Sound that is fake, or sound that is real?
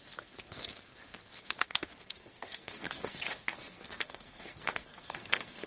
fake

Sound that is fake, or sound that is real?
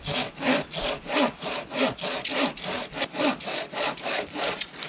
real